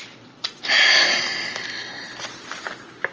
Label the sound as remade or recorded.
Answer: recorded